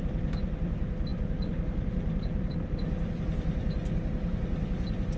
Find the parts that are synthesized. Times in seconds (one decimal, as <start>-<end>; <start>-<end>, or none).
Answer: 0.0-3.8; 4.7-5.2